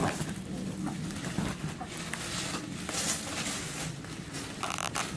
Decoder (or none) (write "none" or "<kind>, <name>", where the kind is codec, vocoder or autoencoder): none